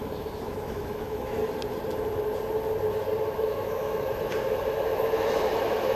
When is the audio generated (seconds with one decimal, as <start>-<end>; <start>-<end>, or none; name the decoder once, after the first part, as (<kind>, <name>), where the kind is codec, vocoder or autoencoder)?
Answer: 0.0-1.4 (autoencoder, DAC-VAE); 3.2-6.0